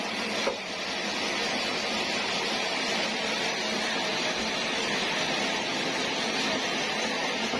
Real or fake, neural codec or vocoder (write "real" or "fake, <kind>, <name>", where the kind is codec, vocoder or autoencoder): fake, vocoder, BigVGAN v2